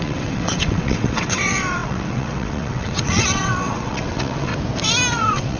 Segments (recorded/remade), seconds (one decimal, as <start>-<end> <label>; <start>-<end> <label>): 0.0-4.5 remade; 4.5-5.1 recorded; 5.1-5.6 remade